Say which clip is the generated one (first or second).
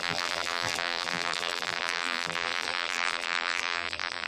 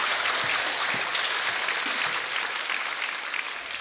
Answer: first